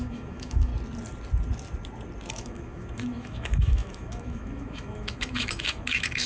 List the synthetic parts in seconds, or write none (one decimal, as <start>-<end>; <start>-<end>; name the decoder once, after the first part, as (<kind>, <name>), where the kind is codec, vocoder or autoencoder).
0.0-0.7 (autoencoder, DAC-VAE); 2.3-6.3